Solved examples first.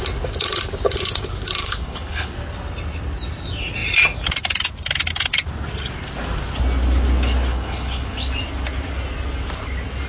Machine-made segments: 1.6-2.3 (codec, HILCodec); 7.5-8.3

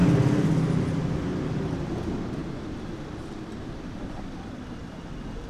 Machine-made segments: 2.4-5.1 (vocoder, BigVGAN v2)